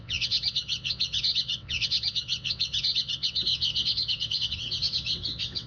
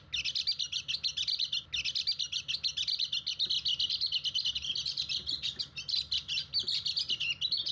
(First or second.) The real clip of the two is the second